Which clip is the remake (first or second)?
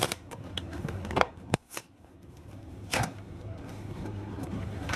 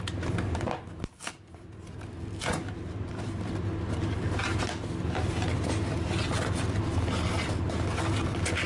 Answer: first